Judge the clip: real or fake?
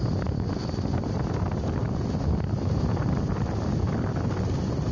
real